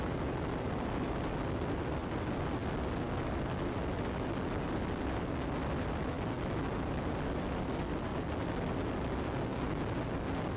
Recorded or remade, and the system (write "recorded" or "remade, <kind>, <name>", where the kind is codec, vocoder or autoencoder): recorded